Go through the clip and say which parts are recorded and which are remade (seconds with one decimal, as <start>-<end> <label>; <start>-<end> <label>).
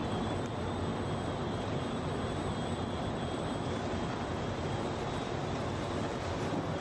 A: 0.0-6.8 remade